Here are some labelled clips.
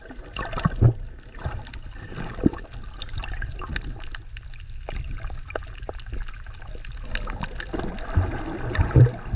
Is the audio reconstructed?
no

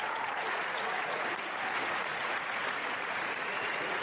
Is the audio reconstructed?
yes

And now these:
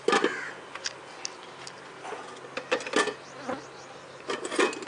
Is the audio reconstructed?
no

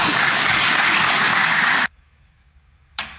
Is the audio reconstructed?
yes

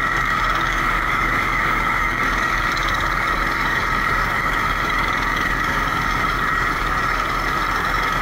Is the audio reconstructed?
yes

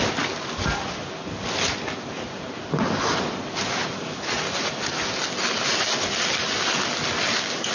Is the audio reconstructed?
no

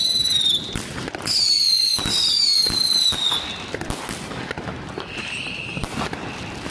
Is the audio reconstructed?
no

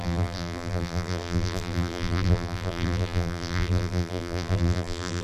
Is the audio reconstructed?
yes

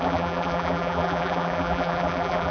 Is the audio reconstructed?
yes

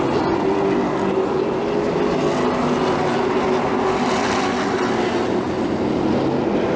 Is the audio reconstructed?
no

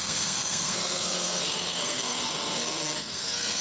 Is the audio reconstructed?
yes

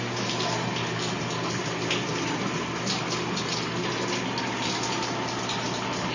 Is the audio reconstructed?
no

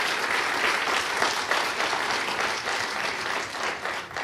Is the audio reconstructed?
no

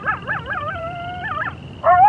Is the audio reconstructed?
yes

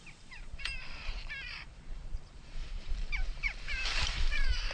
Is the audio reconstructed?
yes